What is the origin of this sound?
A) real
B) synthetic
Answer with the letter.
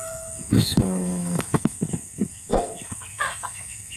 B